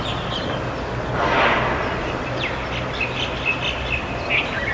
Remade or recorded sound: recorded